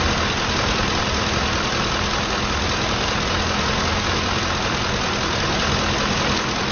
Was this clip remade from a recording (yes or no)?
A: no